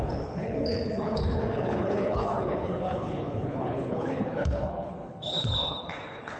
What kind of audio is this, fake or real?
fake